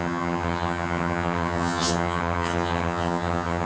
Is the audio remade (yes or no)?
yes